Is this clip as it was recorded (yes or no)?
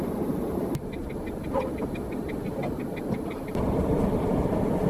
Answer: yes